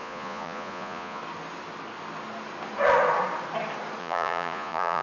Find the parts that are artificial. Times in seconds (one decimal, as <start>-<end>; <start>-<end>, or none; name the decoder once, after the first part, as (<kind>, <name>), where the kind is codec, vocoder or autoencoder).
0.0-1.2 (vocoder, Vocos); 4.0-5.0